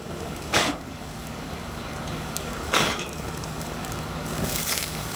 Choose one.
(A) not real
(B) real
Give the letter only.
A